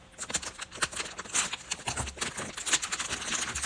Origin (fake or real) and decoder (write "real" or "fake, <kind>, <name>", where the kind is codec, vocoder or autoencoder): real